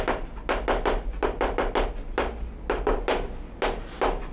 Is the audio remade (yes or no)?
no